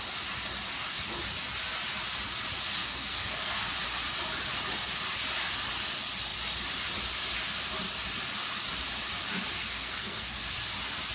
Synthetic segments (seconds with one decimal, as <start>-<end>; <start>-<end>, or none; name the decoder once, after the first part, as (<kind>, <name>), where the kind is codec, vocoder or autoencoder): 2.8-3.7 (codec, SNAC); 9.6-10.4